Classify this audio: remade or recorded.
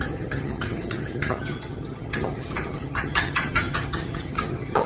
remade